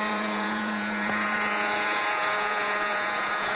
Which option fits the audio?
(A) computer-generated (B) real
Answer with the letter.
A